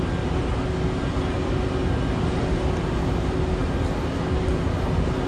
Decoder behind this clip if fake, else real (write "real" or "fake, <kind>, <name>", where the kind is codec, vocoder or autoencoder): real